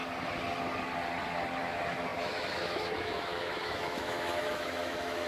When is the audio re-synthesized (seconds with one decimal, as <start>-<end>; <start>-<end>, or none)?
1.6-5.3